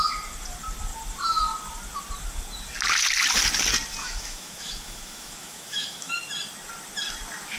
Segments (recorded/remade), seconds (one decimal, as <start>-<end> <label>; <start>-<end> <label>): 0.0-4.0 recorded; 4.0-6.1 remade; 6.1-7.6 recorded